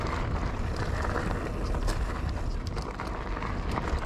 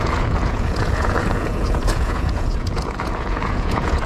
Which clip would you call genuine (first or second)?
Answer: first